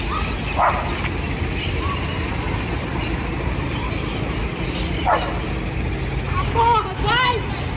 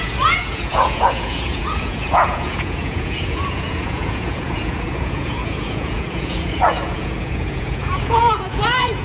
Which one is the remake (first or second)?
second